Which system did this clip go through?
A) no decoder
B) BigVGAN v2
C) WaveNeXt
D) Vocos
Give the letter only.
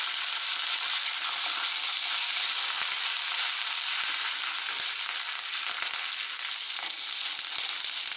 A